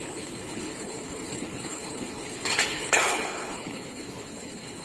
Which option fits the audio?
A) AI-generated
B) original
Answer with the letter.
A